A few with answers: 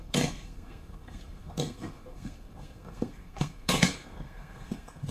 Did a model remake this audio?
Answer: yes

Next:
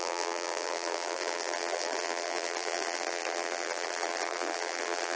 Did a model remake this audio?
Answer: yes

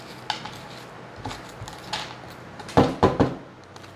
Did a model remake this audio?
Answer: no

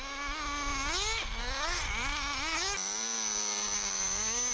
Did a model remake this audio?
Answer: no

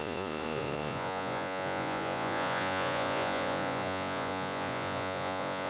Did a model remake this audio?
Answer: yes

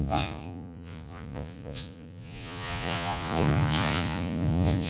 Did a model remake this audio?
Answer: yes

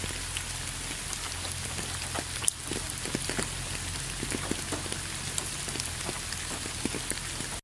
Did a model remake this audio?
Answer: no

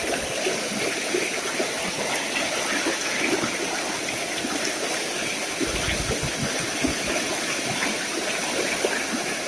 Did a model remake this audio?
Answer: no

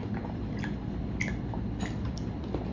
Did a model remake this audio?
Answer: no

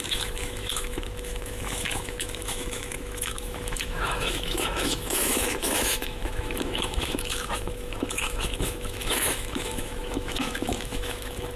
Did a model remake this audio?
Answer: yes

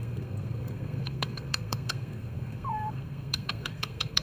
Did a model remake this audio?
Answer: yes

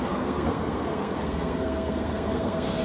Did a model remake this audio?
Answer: yes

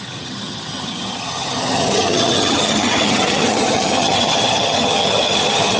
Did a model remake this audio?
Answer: yes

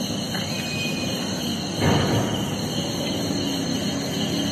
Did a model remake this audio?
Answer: no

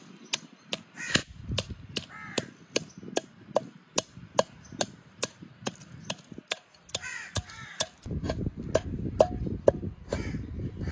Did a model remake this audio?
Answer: no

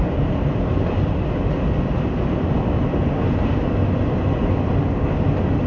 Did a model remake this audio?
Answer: no